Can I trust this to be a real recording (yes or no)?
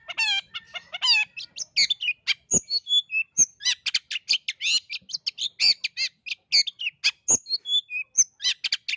yes